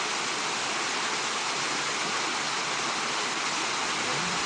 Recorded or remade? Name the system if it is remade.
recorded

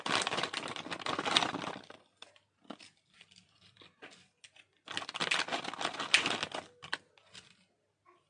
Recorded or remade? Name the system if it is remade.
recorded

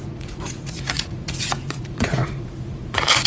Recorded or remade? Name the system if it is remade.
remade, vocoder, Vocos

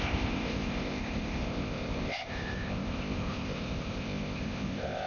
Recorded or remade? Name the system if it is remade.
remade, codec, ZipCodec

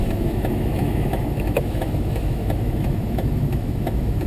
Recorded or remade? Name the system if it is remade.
remade, autoencoder, DAC-VAE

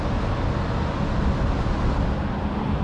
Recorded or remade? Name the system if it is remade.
recorded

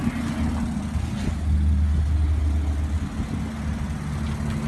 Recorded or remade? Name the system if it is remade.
recorded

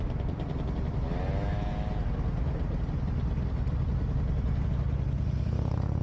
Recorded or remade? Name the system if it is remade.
recorded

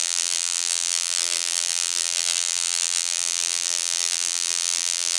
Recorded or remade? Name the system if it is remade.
remade, vocoder, BigVGAN v2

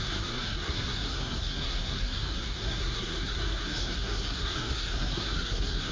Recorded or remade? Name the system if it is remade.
remade, codec, SNAC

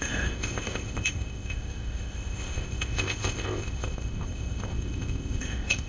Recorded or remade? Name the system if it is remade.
remade, codec, ZipCodec